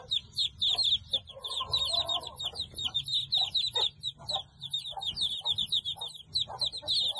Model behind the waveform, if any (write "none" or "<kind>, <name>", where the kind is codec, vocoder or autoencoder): none